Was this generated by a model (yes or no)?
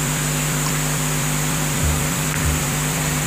yes